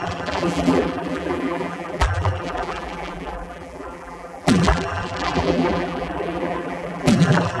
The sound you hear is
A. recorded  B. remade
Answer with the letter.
B